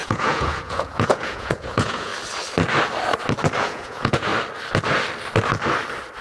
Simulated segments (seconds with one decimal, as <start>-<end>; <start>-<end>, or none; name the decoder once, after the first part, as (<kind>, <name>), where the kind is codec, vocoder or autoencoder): 0.0-2.1 (vocoder, Vocos); 3.6-4.3